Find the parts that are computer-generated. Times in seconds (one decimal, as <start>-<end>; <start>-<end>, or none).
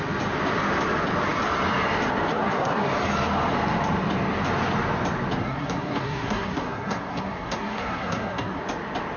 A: 2.3-2.9; 5.4-8.6